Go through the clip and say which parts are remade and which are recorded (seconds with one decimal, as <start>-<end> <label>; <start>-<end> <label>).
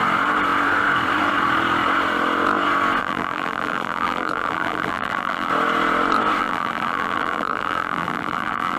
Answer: 0.0-3.0 recorded; 3.0-5.5 remade; 5.5-6.4 recorded; 6.4-8.8 remade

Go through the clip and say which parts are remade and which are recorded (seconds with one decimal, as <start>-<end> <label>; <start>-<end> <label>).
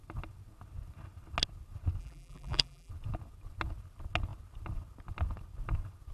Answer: 0.0-2.0 recorded; 2.0-2.9 remade; 2.9-6.1 recorded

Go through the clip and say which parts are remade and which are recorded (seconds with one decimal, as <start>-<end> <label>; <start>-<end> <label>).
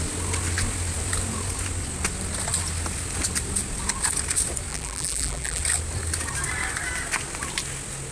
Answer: 0.0-4.7 recorded; 4.7-5.6 remade; 5.6-8.1 recorded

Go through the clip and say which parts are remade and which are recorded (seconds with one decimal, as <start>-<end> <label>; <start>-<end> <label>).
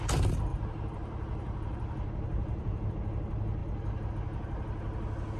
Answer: 0.0-0.5 recorded; 0.5-2.9 remade; 2.9-5.4 recorded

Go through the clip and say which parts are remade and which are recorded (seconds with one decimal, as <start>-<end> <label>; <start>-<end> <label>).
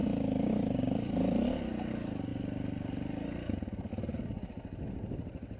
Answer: 0.0-1.9 remade; 1.9-5.6 recorded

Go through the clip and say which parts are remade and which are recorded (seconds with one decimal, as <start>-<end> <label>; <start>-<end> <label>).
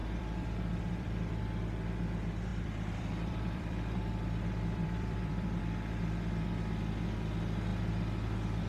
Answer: 0.0-1.4 remade; 1.4-2.5 recorded; 2.5-5.6 remade; 5.6-8.7 recorded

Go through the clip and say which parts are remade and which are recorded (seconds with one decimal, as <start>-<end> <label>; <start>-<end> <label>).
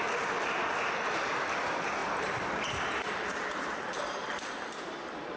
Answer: 0.0-5.4 remade